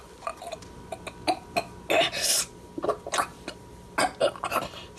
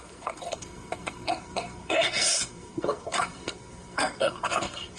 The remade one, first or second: second